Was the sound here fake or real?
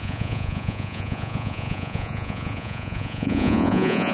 fake